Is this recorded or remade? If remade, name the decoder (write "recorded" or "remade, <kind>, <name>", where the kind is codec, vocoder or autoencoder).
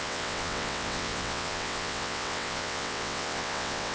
remade, vocoder, WaveNeXt